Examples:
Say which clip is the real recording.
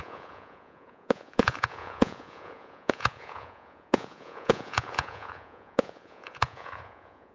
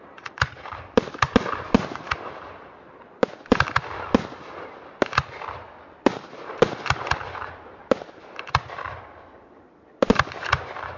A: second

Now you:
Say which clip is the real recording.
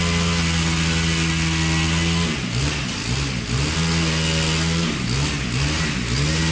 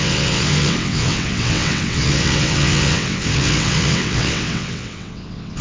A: first